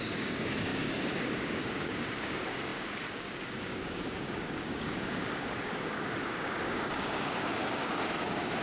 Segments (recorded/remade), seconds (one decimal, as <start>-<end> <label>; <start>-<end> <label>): 0.0-8.6 remade